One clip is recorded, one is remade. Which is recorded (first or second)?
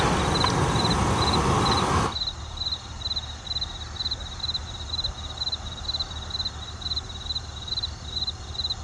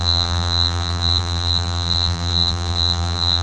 first